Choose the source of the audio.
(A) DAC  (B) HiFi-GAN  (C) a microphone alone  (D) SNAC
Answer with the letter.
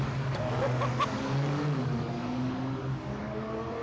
A